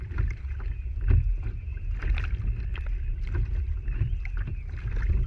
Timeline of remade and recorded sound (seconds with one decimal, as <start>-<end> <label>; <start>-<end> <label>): 0.0-5.3 recorded